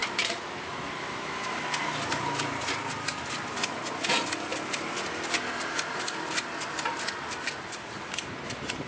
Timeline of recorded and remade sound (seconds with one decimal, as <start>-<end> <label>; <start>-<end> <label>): 0.0-1.5 remade; 1.5-8.9 recorded

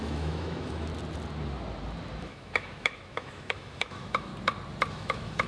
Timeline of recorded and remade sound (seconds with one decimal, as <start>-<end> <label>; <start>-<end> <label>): 0.0-0.9 remade; 0.9-2.2 recorded; 2.2-4.3 remade; 4.3-4.9 recorded; 4.9-5.5 remade

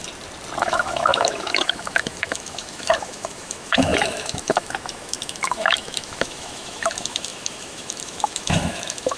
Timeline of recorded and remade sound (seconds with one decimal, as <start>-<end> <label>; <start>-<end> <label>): 0.0-0.6 recorded; 0.6-9.2 remade

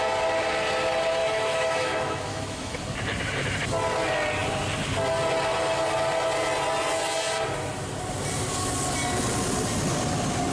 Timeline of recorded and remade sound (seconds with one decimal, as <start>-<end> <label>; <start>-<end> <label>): 0.0-1.2 recorded; 1.2-2.8 remade; 2.8-10.5 recorded

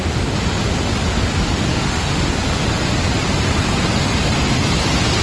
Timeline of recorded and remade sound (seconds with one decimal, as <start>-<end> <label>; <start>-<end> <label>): 0.0-1.7 recorded; 1.7-2.3 remade; 2.3-5.2 recorded

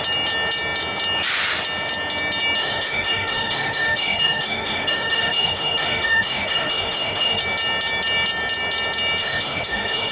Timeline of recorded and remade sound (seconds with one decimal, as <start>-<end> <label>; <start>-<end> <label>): 0.0-2.6 recorded; 2.6-7.4 remade; 7.4-9.2 recorded; 9.2-10.1 remade